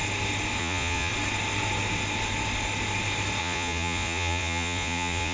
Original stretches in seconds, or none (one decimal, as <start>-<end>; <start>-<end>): 0.0-0.6; 1.1-3.4